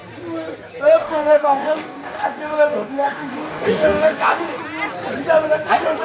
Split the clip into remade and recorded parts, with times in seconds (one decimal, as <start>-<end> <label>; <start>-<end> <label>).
0.0-1.0 recorded; 1.0-4.6 remade; 4.6-6.0 recorded